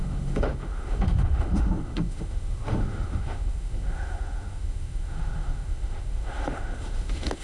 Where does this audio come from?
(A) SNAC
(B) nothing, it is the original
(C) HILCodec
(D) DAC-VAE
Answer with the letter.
D